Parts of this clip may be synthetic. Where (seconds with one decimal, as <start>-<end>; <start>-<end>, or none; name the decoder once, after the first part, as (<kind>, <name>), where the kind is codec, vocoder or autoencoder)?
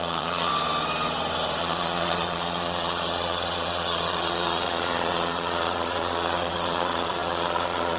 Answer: 0.0-0.5 (vocoder, Vocos); 1.6-8.0